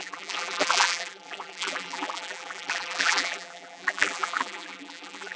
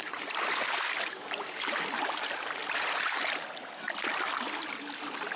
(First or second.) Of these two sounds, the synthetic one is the first